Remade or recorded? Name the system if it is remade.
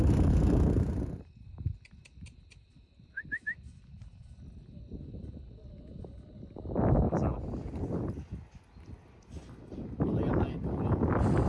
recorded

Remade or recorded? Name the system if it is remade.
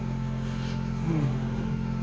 remade, autoencoder, DAC-VAE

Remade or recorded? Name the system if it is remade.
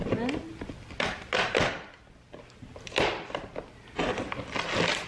recorded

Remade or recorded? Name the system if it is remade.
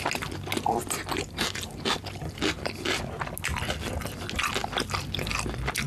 recorded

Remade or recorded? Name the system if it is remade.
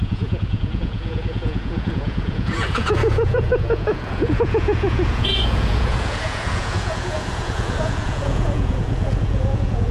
remade, vocoder, Vocos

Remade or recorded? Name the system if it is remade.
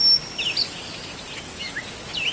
recorded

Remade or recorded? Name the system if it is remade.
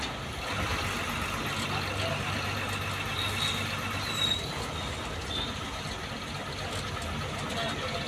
recorded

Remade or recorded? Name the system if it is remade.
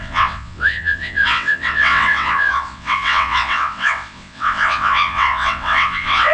remade, vocoder, WaveNeXt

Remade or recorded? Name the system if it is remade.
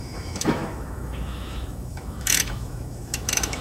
remade, autoencoder, DAC-VAE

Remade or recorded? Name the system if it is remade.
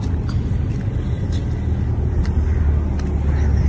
recorded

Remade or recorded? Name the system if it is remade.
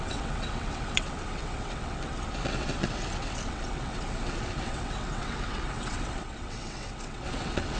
remade, vocoder, WaveNeXt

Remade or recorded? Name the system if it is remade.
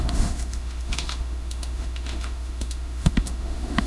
remade, autoencoder, DAC-VAE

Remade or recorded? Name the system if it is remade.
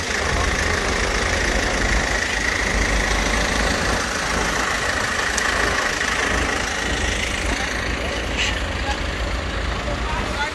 recorded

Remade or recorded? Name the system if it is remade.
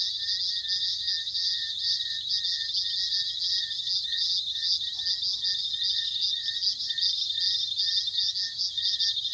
recorded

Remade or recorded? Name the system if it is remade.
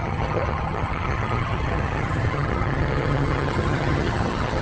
remade, vocoder, HiFi-GAN